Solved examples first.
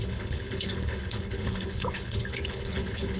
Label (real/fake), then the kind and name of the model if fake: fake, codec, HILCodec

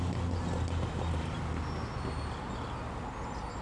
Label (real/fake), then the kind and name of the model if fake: real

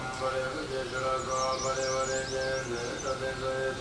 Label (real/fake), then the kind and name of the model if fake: real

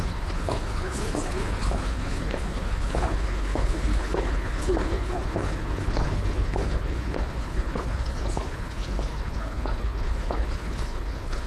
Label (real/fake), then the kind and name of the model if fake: fake, codec, HILCodec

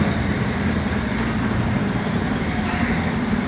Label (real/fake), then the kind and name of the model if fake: real